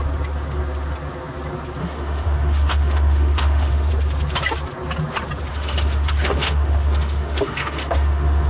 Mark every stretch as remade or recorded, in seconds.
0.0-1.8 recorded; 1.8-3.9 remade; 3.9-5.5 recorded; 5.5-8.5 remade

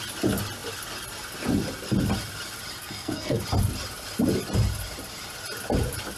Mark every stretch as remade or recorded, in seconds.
0.0-2.8 recorded; 2.8-3.4 remade; 3.4-6.2 recorded

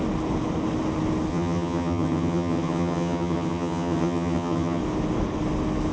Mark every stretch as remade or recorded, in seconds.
0.0-1.3 recorded; 1.3-4.8 remade; 4.8-5.9 recorded

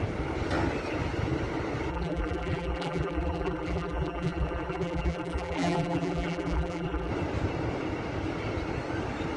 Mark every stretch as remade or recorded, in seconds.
0.0-1.9 recorded; 1.9-7.1 remade; 7.1-9.4 recorded

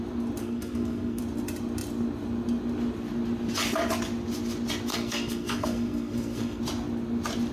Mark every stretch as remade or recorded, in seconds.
0.0-0.4 recorded; 0.4-1.2 remade; 1.2-4.9 recorded; 4.9-6.6 remade; 6.6-7.5 recorded

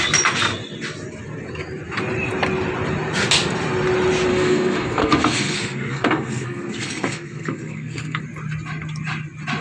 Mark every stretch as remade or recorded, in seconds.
0.0-4.3 recorded; 4.3-8.2 remade; 8.2-9.6 recorded